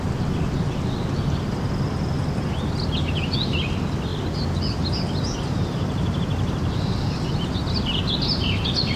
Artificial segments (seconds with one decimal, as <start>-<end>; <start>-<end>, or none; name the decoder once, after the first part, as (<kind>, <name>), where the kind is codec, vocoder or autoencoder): none